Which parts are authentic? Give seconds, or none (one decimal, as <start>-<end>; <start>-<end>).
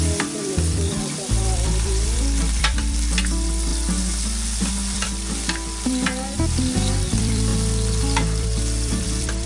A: 3.7-4.7; 7.5-8.0